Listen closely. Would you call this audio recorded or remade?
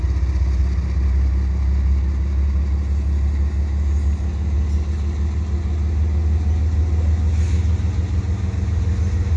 recorded